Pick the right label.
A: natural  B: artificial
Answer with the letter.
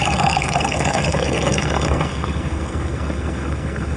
B